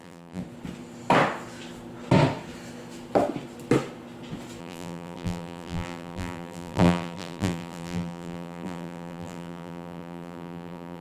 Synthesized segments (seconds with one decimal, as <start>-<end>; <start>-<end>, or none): 0.0-0.4; 4.6-11.0

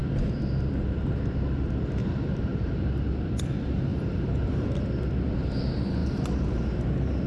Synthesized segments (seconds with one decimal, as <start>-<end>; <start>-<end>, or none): 2.0-2.7; 3.9-4.7; 6.0-6.8

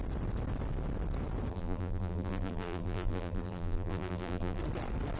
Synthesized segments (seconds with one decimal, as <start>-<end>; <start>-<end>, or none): 1.5-4.6

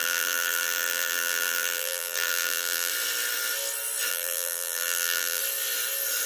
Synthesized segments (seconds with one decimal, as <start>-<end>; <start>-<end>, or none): 0.0-2.9; 4.1-5.4

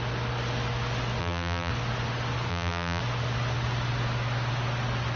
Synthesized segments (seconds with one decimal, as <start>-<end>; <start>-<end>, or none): 1.2-1.7; 2.5-3.0

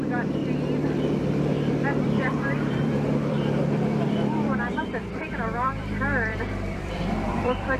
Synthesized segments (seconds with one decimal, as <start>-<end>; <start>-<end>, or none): 0.0-0.4; 1.2-7.8

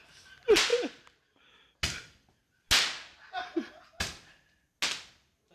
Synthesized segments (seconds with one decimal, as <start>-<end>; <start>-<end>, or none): none